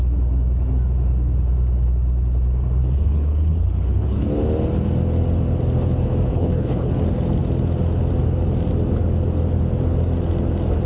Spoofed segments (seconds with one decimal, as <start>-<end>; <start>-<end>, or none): 2.8-4.3; 6.3-6.9